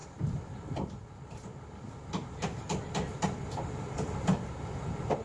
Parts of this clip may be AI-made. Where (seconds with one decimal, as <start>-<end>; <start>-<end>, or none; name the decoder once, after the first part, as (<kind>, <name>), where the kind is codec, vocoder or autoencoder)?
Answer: none